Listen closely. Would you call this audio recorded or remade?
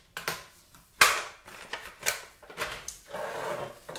recorded